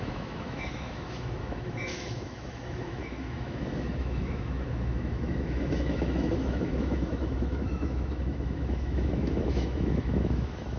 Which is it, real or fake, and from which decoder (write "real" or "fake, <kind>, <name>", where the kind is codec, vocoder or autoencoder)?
fake, autoencoder, DAC-VAE